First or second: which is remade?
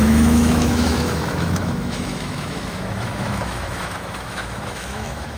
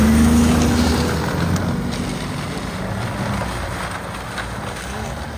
first